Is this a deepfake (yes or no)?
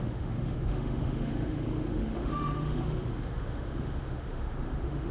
yes